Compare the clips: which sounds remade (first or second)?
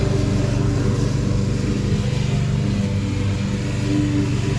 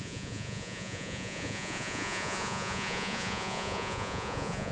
second